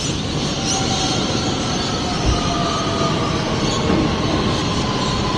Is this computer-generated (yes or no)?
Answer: no